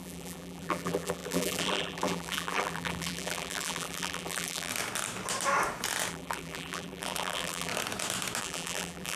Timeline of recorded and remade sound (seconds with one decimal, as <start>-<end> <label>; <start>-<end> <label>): 0.0-4.7 remade; 4.7-6.1 recorded; 6.1-7.7 remade; 7.7-8.4 recorded; 8.4-9.2 remade